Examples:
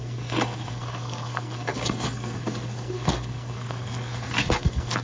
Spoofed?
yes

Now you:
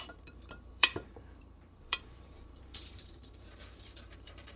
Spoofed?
yes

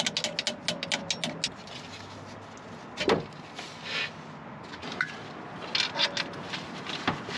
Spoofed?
no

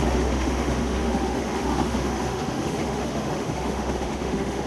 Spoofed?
yes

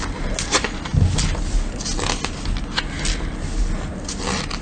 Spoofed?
no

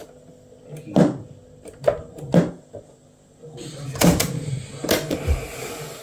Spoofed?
no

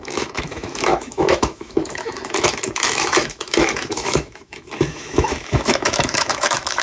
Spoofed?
yes